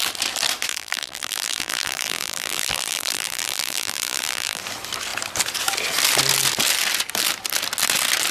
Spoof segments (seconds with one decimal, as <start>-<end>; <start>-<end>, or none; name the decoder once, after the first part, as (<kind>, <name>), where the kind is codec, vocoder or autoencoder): 0.7-4.6 (vocoder, BigVGAN v2)